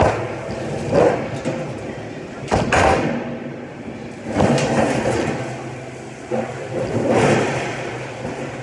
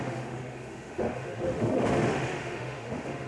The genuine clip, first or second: first